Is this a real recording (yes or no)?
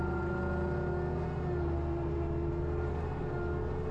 yes